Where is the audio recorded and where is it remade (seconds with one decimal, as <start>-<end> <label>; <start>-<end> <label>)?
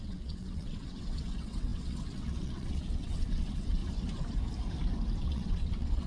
0.0-3.8 remade; 3.8-5.2 recorded; 5.2-6.1 remade